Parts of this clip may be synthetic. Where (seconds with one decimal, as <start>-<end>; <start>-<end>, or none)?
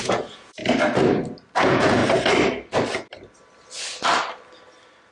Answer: 0.0-0.6; 1.6-2.0